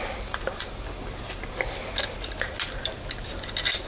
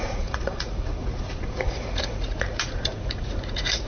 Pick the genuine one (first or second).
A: first